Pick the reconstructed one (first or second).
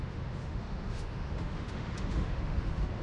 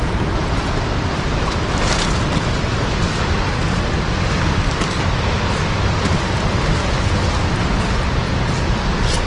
first